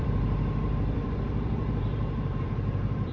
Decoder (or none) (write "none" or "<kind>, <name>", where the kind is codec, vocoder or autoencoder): vocoder, BigVGAN v2